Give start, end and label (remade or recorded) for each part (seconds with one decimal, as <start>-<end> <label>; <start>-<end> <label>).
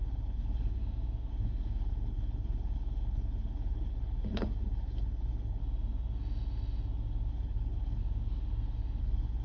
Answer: 0.0-0.8 remade; 0.8-1.3 recorded; 1.3-5.6 remade; 5.6-7.3 recorded; 7.3-8.0 remade; 8.0-9.0 recorded; 9.0-9.4 remade